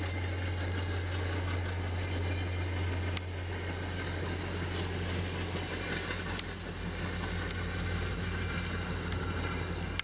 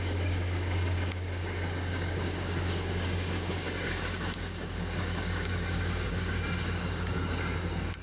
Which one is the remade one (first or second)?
second